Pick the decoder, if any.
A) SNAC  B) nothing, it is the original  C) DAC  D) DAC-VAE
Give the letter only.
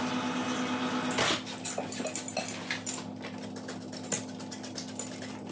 B